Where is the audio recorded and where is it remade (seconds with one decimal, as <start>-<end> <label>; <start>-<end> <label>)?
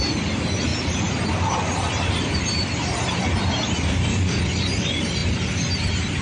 0.0-0.7 recorded; 0.7-4.4 remade; 4.4-6.2 recorded